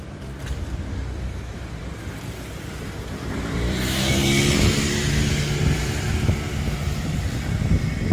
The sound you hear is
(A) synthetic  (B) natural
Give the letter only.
A